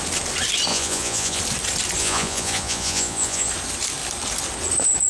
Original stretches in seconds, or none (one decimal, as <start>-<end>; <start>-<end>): 0.0-0.7; 1.4-2.0; 3.5-5.1